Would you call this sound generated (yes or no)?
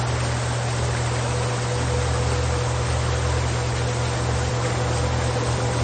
no